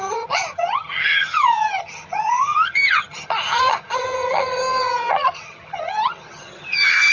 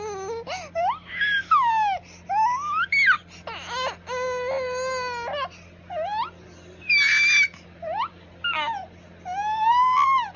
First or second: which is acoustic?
second